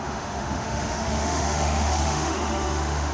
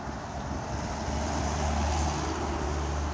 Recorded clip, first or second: second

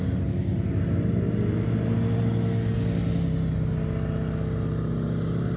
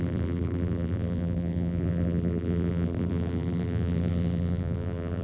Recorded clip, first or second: first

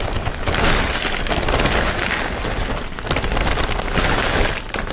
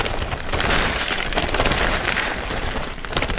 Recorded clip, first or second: first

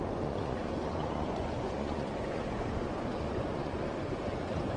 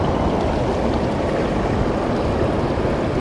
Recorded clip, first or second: second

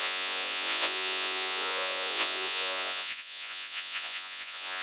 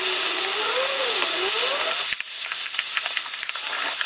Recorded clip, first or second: second